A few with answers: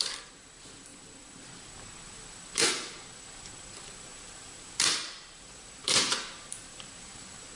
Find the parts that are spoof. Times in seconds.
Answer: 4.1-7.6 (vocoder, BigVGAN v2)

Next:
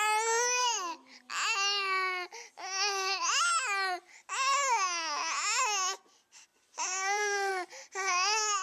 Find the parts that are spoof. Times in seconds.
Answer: 0.6-1.3 (vocoder, BigVGAN v2); 6.5-7.5

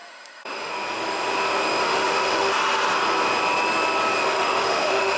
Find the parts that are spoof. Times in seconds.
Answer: 0.0-0.7 (autoencoder, DAC-VAE); 1.8-2.6; 4.2-5.2